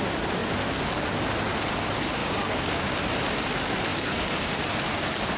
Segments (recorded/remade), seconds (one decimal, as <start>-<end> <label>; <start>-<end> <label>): 0.0-2.2 recorded; 2.2-2.9 remade; 2.9-3.9 recorded; 3.9-4.5 remade; 4.5-5.4 recorded